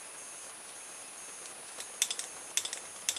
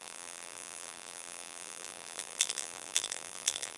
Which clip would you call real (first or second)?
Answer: first